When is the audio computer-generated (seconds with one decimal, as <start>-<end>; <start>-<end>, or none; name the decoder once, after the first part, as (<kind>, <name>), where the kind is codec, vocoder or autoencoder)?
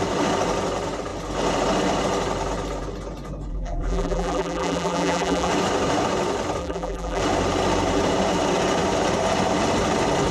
3.5-5.5 (vocoder, BigVGAN v2); 6.6-7.2